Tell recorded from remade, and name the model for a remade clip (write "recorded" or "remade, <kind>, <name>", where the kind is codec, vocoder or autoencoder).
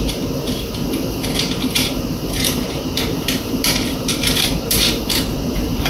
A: remade, vocoder, BigVGAN v2